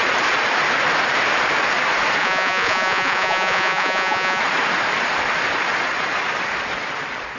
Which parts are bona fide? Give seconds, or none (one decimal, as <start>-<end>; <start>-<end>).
0.0-2.2; 4.4-7.4